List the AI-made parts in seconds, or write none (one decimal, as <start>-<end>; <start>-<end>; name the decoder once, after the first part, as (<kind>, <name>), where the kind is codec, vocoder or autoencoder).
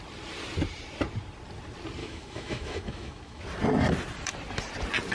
2.0-3.4 (autoencoder, DAC-VAE)